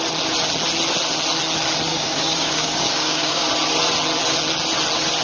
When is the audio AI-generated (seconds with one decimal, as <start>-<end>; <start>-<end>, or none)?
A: 1.9-3.5